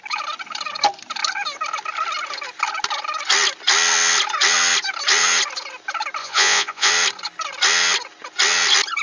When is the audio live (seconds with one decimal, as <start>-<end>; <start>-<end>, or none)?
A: 0.0-6.2; 6.9-9.0